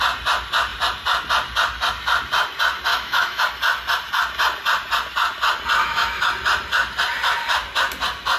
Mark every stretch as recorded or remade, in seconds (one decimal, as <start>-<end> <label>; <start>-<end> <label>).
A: 0.0-2.9 recorded; 2.9-3.4 remade; 3.4-5.8 recorded; 5.8-6.3 remade; 6.3-8.4 recorded